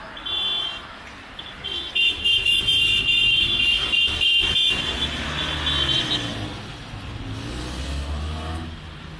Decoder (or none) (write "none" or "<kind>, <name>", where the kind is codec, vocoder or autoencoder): none